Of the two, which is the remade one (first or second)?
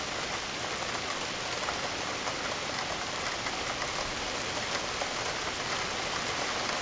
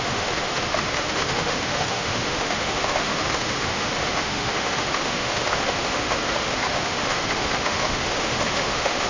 second